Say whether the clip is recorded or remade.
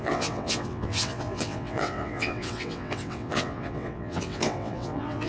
remade